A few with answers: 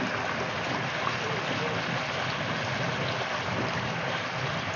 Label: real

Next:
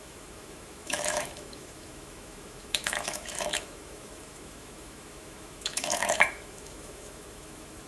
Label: fake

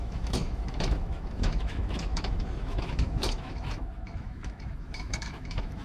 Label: fake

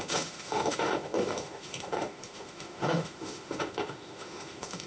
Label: fake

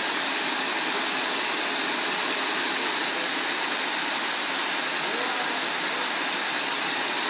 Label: real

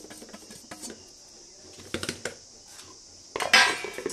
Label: real